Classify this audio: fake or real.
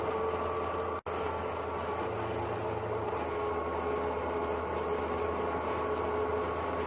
real